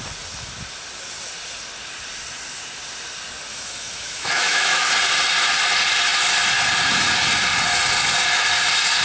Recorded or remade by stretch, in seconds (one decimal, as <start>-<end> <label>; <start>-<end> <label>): 0.0-3.5 recorded; 3.5-4.9 remade; 4.9-9.0 recorded